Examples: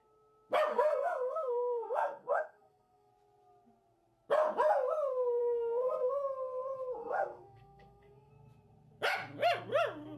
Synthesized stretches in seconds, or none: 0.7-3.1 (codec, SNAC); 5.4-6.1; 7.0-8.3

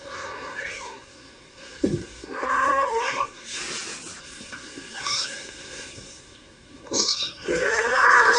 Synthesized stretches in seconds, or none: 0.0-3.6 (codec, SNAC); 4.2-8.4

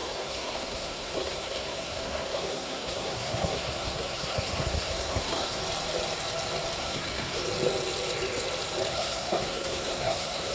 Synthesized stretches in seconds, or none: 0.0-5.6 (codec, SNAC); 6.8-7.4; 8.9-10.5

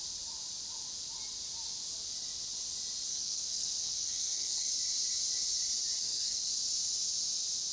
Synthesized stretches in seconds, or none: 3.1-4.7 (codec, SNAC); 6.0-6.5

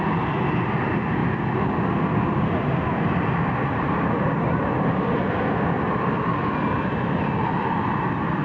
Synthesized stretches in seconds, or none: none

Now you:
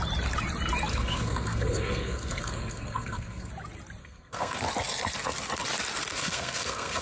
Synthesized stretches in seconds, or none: 0.9-3.5 (codec, SNAC); 4.0-4.6; 6.1-7.0